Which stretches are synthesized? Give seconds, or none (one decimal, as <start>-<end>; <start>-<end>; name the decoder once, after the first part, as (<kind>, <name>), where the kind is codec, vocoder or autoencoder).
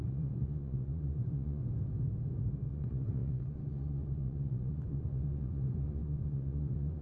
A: 0.0-1.6 (vocoder, Vocos); 2.7-7.0